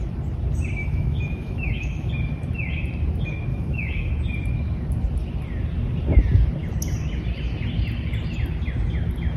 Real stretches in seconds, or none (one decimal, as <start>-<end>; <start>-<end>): 0.0-0.8; 2.1-3.5; 4.1-9.4